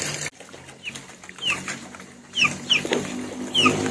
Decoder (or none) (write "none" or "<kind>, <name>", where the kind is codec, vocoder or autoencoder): none